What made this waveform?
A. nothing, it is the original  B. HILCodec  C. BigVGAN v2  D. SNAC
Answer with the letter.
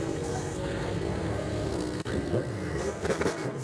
D